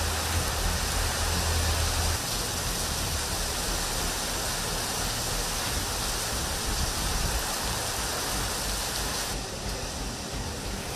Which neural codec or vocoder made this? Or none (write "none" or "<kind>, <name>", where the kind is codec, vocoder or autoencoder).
none